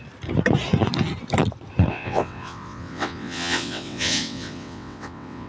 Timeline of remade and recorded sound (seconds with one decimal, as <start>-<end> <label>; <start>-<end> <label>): 0.0-1.9 recorded; 1.9-5.5 remade